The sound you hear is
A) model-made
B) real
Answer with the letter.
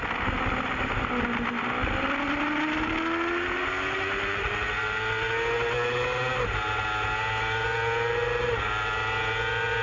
B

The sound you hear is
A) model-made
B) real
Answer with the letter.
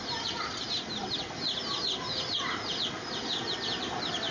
B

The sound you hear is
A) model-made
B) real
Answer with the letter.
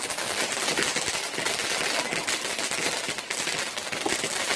B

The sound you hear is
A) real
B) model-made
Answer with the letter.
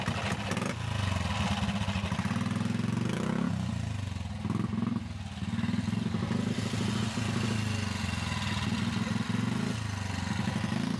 A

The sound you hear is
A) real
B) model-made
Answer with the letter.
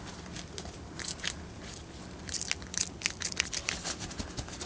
A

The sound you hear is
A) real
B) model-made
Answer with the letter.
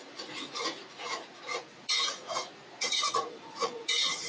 B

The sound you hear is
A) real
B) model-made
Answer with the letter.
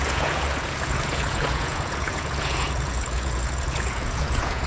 B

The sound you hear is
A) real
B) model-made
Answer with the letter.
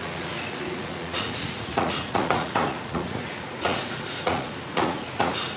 B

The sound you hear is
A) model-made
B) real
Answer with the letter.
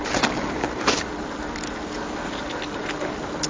B